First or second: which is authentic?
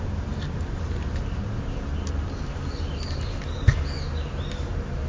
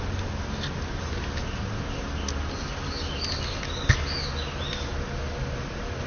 second